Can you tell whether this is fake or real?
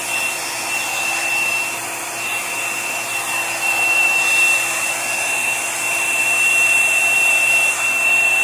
fake